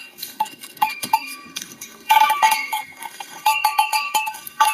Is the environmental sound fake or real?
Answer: fake